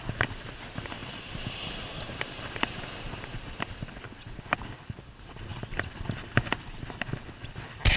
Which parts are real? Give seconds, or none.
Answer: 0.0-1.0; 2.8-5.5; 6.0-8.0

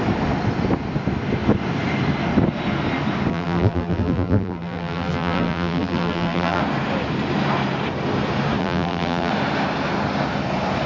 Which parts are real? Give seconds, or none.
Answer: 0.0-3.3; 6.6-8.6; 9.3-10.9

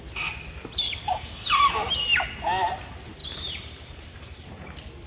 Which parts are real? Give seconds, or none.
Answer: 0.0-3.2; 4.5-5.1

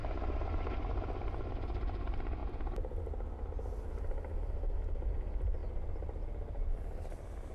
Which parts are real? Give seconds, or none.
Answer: 0.0-7.5